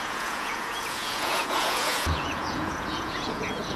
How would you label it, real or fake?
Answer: fake